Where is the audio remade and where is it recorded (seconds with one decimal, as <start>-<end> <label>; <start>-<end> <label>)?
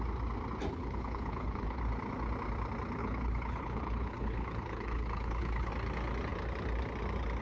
0.0-0.7 recorded; 0.7-1.8 remade; 1.8-3.0 recorded; 3.0-5.7 remade; 5.7-7.4 recorded